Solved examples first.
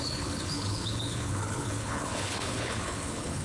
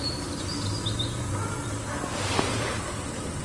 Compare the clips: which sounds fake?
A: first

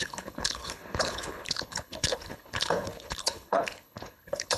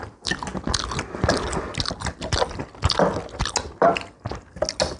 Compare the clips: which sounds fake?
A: first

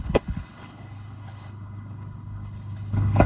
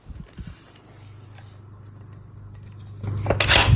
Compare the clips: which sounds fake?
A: first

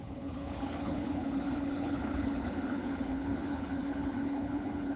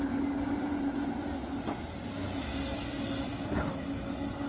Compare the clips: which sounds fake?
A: first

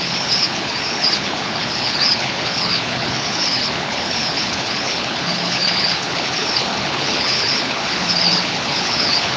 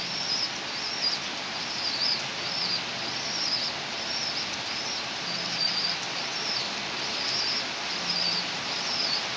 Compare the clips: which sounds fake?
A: first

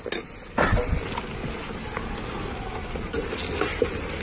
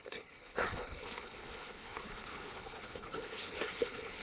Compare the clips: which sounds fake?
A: second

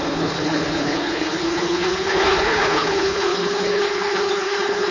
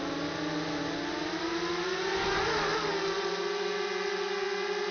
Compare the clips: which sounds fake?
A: first